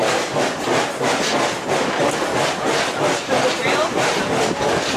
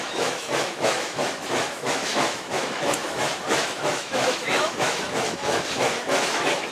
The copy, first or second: second